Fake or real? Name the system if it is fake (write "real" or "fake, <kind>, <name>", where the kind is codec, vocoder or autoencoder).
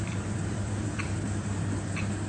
fake, vocoder, BigVGAN v2